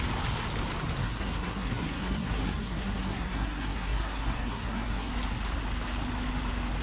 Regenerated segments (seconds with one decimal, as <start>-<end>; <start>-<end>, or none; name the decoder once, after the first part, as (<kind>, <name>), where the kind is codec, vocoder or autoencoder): 1.0-5.1 (codec, SNAC)